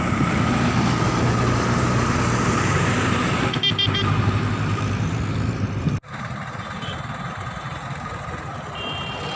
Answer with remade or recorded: remade